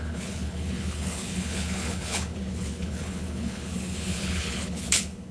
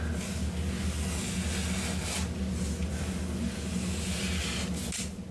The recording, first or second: second